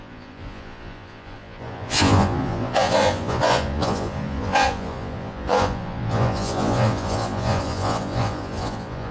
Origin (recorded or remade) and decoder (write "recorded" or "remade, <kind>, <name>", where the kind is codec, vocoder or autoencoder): remade, vocoder, Vocos